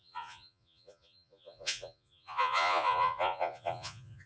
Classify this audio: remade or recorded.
remade